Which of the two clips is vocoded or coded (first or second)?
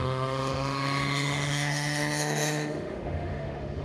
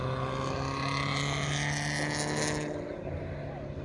first